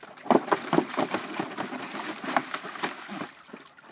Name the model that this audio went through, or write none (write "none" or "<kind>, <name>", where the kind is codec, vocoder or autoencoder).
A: none